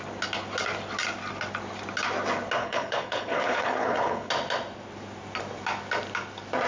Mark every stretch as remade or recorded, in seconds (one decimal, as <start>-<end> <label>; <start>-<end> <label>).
0.0-2.6 recorded; 2.6-4.3 remade; 4.3-6.7 recorded